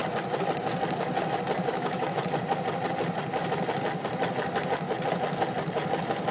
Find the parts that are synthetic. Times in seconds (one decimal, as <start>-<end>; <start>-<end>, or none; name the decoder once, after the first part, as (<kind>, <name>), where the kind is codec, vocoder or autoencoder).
1.6-2.2 (autoencoder, DAC-VAE)